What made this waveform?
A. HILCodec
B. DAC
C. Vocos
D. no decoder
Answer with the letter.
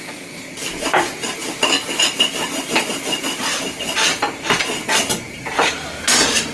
D